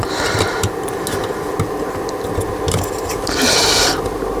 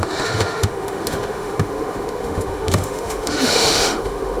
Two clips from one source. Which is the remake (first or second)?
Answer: second